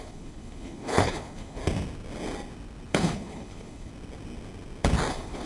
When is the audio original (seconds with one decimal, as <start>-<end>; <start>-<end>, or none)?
1.6-2.9; 3.9-5.1